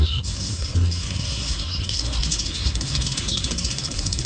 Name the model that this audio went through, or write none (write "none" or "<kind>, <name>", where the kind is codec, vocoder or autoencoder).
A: codec, SNAC